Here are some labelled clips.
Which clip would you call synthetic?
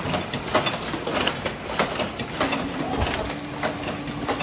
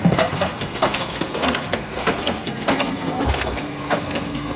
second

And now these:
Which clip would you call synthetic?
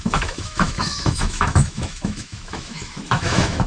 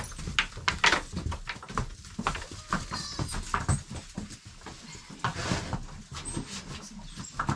first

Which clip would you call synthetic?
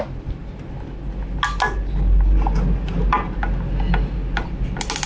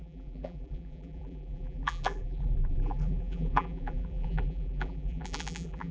second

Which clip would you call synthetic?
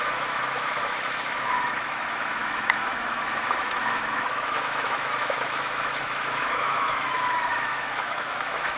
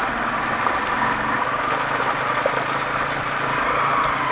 first